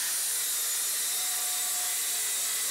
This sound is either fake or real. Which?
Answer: real